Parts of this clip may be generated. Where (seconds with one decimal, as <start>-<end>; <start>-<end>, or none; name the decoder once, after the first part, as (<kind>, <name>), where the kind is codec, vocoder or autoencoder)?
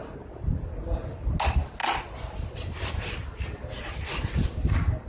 none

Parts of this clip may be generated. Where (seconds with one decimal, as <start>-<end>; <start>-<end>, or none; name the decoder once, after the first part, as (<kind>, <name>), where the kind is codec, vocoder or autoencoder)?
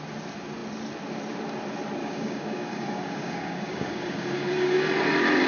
2.0-4.8 (codec, DAC)